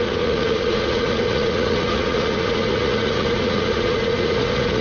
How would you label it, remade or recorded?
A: remade